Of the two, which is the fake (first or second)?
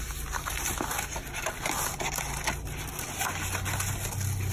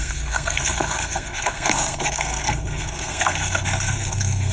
second